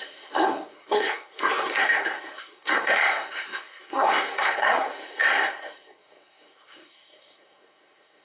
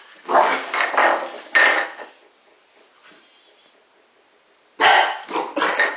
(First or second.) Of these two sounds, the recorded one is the second